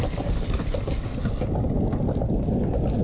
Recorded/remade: recorded